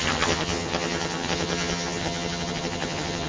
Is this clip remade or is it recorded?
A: remade